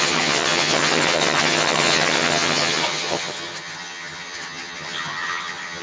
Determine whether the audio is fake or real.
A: fake